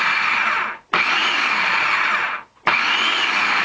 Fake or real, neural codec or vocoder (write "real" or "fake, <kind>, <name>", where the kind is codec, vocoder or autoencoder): real